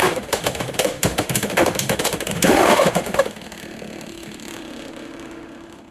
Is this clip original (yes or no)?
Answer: no